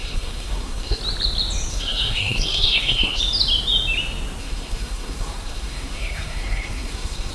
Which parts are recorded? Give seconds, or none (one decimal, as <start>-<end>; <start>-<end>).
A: 1.0-1.7; 3.2-4.4

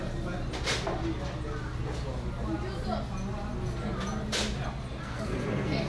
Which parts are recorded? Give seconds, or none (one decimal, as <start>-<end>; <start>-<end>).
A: 0.0-5.0

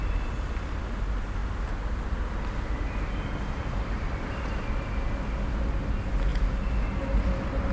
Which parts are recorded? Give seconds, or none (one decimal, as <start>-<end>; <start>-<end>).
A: 0.0-7.7